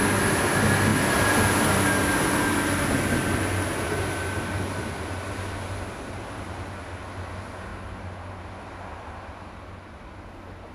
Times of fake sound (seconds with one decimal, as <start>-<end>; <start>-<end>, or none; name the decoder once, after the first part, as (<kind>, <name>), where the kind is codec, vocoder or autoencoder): 7.7-8.4 (vocoder, BigVGAN v2)